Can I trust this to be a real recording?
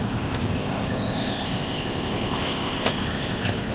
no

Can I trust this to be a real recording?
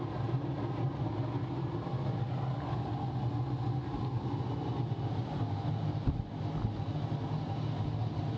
yes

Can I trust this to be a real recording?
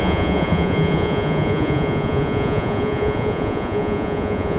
no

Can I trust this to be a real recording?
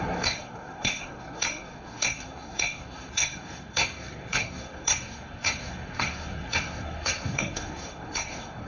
no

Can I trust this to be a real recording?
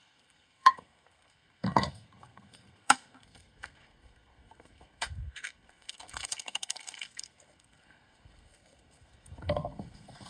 no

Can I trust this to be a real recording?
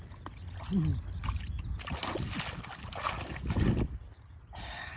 yes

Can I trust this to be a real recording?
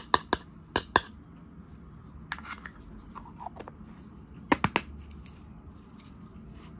yes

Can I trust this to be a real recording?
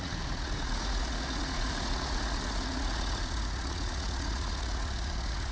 no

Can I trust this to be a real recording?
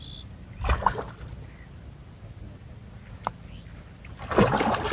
yes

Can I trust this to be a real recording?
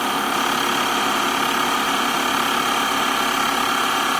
yes